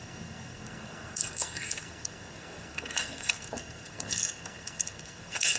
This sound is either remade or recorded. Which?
remade